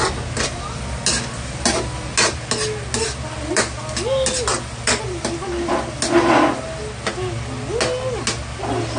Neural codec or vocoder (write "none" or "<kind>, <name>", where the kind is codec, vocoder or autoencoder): none